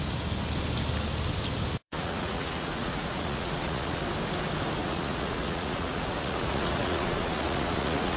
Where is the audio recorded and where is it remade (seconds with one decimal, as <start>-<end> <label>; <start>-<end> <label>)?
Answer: 0.0-1.7 recorded; 1.7-4.0 remade; 4.0-4.8 recorded; 4.8-8.2 remade

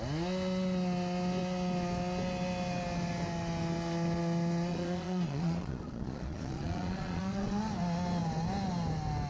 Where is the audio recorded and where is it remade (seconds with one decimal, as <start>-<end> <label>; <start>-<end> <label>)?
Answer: 0.0-4.7 recorded; 4.7-7.6 remade; 7.6-9.3 recorded

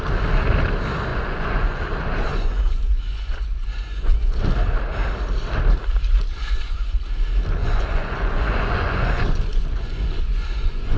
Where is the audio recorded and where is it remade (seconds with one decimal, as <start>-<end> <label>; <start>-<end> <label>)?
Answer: 0.0-1.1 recorded; 1.1-1.8 remade; 1.8-2.3 recorded; 2.3-4.4 remade; 4.4-6.3 recorded; 6.3-7.0 remade; 7.0-7.6 recorded; 7.6-11.0 remade

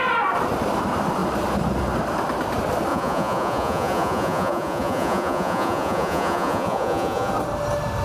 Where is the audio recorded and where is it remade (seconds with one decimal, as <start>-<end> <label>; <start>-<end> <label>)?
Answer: 0.0-2.9 recorded; 2.9-7.3 remade; 7.3-8.0 recorded

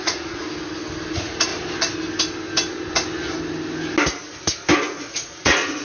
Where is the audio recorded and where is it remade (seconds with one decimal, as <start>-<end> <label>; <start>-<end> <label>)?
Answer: 0.0-0.4 remade; 0.4-1.1 recorded; 1.1-1.5 remade; 1.5-5.0 recorded; 5.0-5.8 remade

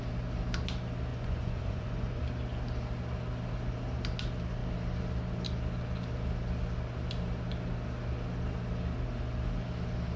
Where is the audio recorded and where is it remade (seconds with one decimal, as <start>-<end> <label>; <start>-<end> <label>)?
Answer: 0.0-1.1 recorded; 1.1-2.2 remade; 2.2-10.2 recorded